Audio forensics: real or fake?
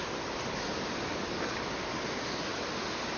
real